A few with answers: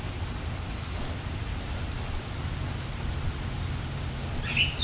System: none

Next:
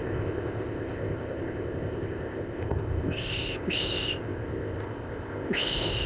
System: codec, ZipCodec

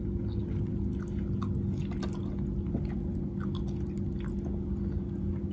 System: none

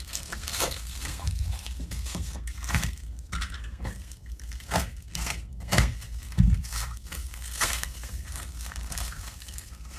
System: codec, SNAC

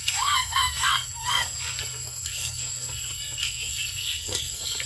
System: codec, SNAC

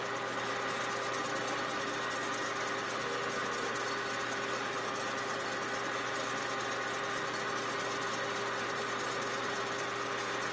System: none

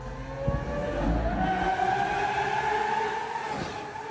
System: none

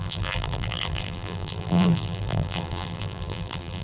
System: vocoder, BigVGAN v2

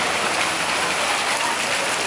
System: none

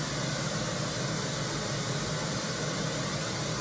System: none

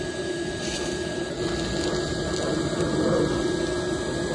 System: none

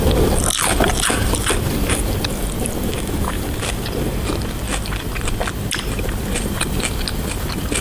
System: none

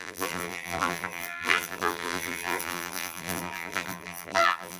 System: vocoder, BigVGAN v2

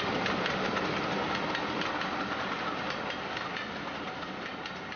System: none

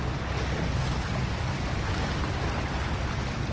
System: none